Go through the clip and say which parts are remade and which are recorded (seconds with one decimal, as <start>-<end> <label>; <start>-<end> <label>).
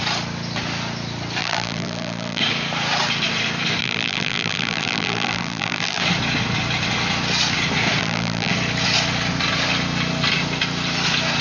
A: 0.0-1.4 recorded; 1.4-2.4 remade; 2.4-3.8 recorded; 3.8-6.0 remade; 6.0-8.0 recorded; 8.0-8.5 remade; 8.5-11.4 recorded